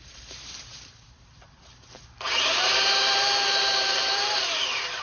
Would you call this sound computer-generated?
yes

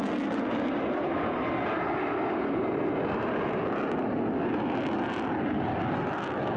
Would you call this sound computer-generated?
no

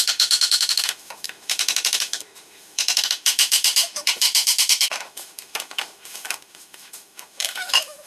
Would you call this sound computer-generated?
yes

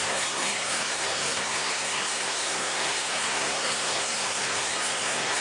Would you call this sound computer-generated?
yes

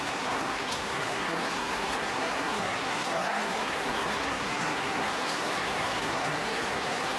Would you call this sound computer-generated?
yes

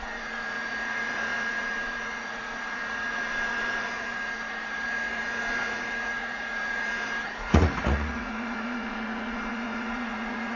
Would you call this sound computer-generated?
yes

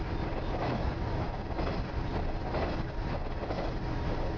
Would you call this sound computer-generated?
no